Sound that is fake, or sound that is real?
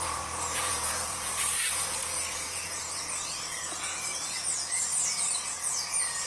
fake